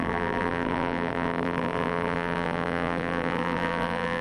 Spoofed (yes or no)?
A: yes